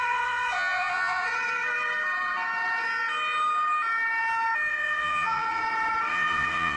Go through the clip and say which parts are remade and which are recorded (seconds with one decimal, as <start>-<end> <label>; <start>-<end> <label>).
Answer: 0.0-1.3 remade; 1.3-4.7 recorded; 4.7-5.6 remade; 5.6-6.1 recorded; 6.1-6.8 remade